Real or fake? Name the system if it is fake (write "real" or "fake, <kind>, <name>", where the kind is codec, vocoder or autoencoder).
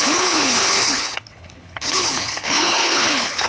fake, codec, HILCodec